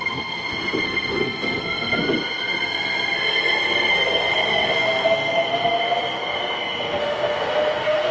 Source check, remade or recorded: remade